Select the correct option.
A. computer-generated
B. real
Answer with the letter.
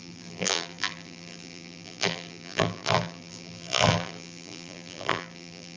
A